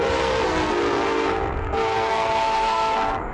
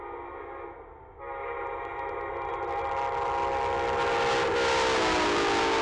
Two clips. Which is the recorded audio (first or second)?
second